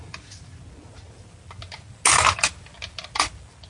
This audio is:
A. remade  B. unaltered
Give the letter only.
B